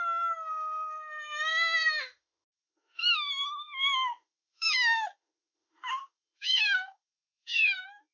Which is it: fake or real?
fake